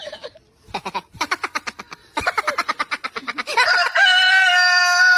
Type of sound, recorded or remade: recorded